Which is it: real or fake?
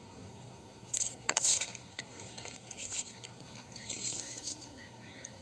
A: fake